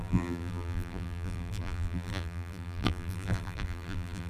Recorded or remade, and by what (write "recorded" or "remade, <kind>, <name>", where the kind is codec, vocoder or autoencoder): remade, vocoder, BigVGAN v2